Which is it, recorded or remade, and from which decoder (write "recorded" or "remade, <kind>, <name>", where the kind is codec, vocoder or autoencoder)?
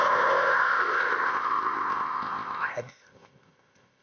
remade, codec, ZipCodec